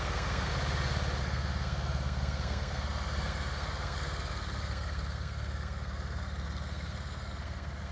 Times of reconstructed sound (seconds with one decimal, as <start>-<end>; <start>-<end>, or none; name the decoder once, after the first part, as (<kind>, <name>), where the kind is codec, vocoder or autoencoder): 0.0-0.5 (codec, SNAC); 1.2-7.9